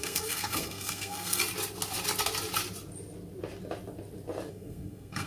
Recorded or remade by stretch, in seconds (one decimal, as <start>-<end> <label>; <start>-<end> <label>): 0.0-1.4 remade; 1.4-4.5 recorded; 4.5-5.3 remade